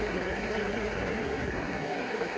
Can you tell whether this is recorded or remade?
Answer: remade